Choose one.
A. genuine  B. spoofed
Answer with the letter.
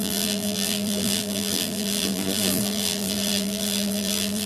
B